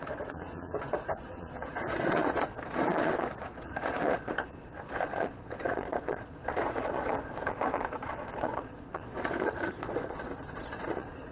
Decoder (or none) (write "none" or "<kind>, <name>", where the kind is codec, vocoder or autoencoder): vocoder, Vocos